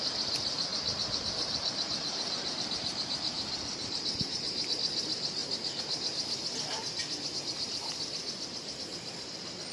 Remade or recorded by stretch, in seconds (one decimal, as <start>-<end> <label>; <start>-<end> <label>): 0.0-0.7 recorded; 0.7-4.7 remade; 4.7-9.7 recorded